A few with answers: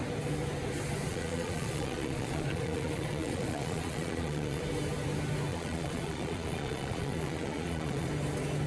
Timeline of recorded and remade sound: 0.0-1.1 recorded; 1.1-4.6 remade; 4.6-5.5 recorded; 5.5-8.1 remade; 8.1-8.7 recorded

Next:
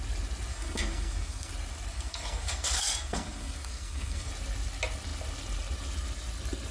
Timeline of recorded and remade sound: 0.0-0.5 recorded; 0.5-1.5 remade; 1.5-1.9 recorded; 1.9-4.3 remade; 4.3-6.7 recorded